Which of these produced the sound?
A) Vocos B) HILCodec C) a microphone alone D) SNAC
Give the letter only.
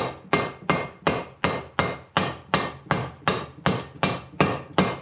C